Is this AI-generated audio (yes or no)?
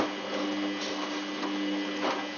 no